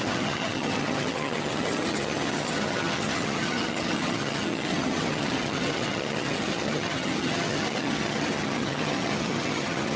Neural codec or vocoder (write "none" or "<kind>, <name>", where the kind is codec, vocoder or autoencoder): vocoder, HiFi-GAN